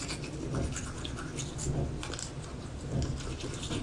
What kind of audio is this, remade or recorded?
recorded